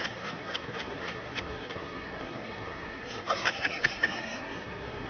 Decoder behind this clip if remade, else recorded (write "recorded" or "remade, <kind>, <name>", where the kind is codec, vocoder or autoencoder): remade, codec, SNAC